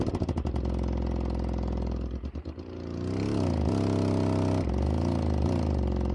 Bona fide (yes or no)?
yes